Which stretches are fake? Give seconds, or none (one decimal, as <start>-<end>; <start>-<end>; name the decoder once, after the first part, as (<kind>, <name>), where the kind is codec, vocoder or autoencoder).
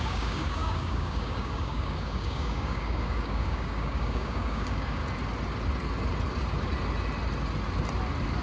0.0-5.0 (codec, DAC)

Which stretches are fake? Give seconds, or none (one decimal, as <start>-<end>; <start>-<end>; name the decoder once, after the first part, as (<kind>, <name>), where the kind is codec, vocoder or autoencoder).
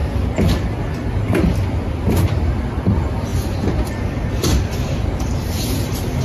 1.9-6.2 (vocoder, BigVGAN v2)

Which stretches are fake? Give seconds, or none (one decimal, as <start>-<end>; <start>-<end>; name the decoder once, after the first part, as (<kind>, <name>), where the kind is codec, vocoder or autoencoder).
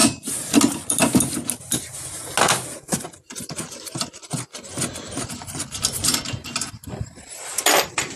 none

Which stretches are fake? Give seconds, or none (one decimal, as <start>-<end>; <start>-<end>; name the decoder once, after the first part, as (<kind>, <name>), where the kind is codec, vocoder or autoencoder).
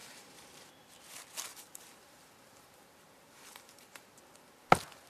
0.0-0.7 (vocoder, BigVGAN v2); 1.5-4.6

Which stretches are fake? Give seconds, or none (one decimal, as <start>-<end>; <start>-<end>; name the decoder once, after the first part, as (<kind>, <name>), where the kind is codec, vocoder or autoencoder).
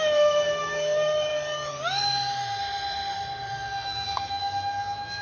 0.0-1.3 (autoencoder, DAC-VAE); 2.0-2.6; 3.5-5.2